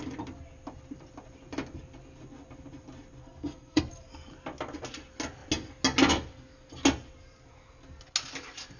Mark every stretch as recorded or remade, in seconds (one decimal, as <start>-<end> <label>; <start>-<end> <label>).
0.0-3.2 recorded; 3.2-3.8 remade; 3.8-8.8 recorded